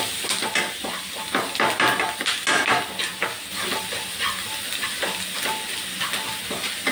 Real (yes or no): yes